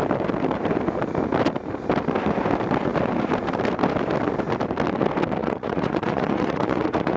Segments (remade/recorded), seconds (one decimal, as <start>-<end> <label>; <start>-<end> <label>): 0.0-5.4 recorded; 5.4-7.2 remade